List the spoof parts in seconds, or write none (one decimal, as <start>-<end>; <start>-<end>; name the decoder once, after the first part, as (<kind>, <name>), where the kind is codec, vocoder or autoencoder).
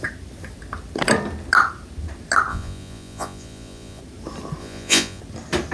2.5-4.0 (vocoder, Vocos); 4.6-5.2